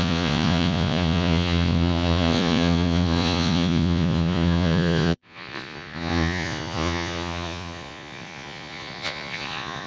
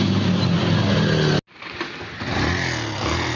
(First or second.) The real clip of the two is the second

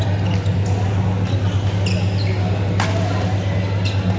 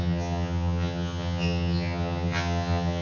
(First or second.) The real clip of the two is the first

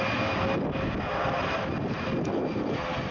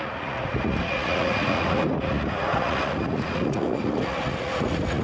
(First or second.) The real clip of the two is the first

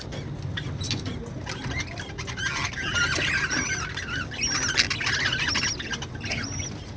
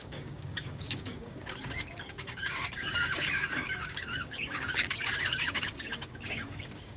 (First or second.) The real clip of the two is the first